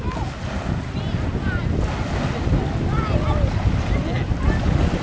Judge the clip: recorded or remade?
recorded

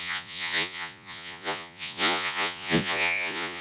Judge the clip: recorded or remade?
remade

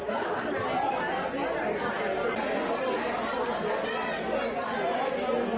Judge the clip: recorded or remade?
recorded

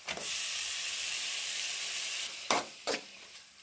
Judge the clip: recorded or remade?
remade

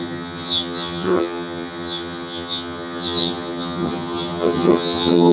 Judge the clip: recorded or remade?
remade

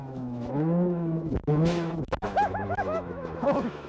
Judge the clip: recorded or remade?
remade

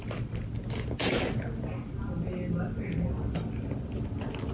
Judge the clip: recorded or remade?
recorded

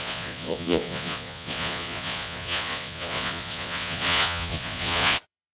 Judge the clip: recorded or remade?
remade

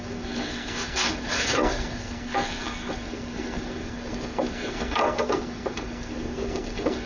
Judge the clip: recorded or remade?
remade